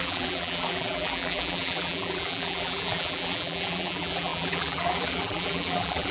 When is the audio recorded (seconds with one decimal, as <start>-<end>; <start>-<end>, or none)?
none